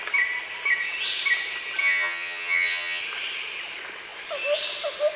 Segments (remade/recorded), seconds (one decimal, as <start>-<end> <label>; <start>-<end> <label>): 0.0-1.8 recorded; 1.8-3.0 remade; 3.0-5.2 recorded

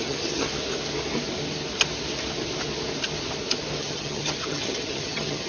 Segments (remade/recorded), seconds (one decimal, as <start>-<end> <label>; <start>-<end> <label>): 0.0-0.5 remade; 0.5-3.8 recorded; 3.8-5.5 remade

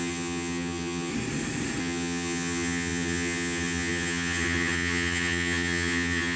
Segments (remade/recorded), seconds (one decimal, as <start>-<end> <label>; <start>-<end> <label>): 0.0-1.1 remade; 1.1-1.8 recorded; 1.8-6.4 remade

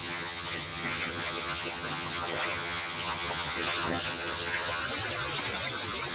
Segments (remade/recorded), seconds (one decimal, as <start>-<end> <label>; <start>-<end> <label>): 0.0-4.8 remade; 4.8-6.1 recorded

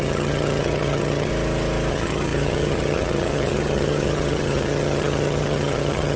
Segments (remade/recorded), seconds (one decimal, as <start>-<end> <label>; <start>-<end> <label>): 0.0-1.3 remade; 1.3-1.9 recorded; 1.9-6.2 remade

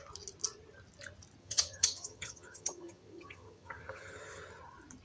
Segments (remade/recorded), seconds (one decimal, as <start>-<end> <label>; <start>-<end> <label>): 0.0-1.4 recorded; 1.4-4.4 remade; 4.4-5.0 recorded

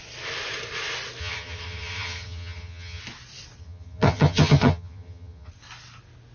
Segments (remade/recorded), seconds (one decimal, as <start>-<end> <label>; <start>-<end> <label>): 0.0-1.2 recorded; 1.2-3.0 remade; 3.0-3.6 recorded; 3.6-5.5 remade; 5.5-6.3 recorded